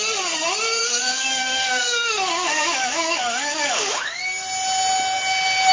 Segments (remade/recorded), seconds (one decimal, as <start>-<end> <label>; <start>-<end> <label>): 0.0-0.8 recorded; 0.8-4.2 remade; 4.2-5.7 recorded